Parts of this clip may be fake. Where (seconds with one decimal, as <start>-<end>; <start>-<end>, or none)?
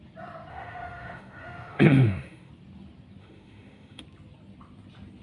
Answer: 0.5-2.5; 3.2-4.0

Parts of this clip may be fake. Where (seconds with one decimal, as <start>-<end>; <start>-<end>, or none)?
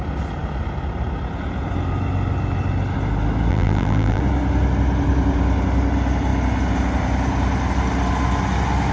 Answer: 3.5-4.2